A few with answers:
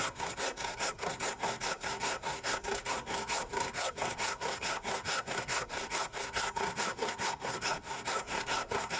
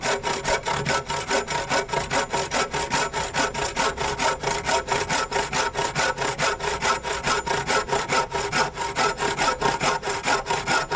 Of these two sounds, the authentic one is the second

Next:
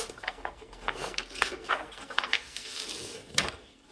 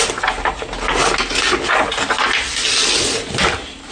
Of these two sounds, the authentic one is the second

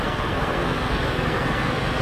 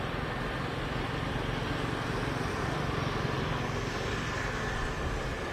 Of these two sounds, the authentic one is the second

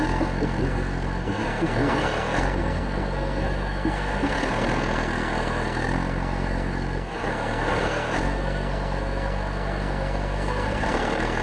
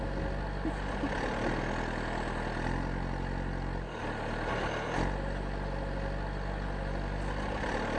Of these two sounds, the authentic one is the second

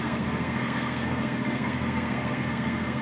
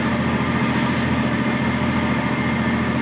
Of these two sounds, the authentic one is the second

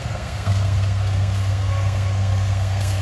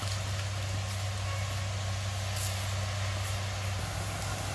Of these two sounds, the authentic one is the second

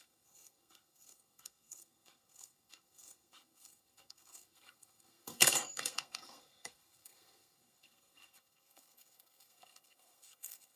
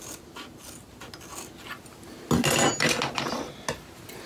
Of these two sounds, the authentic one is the second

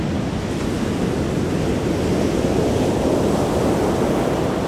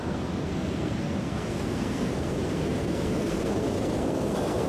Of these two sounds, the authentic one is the first